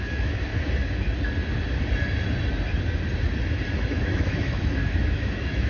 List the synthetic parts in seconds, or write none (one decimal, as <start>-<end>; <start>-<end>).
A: 0.0-0.5; 3.9-5.7